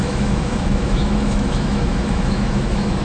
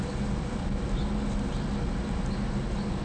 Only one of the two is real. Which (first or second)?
second